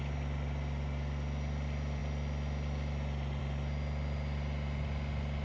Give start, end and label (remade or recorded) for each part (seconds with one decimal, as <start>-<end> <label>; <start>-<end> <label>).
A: 0.0-5.4 recorded